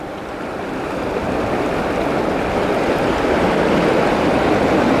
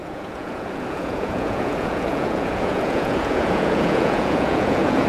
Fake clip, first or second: second